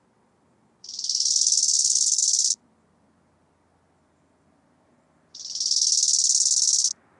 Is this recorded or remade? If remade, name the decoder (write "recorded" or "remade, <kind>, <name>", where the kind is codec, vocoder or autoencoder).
recorded